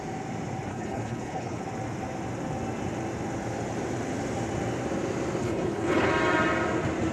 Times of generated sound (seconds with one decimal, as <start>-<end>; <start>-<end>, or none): 0.7-1.6; 5.4-6.1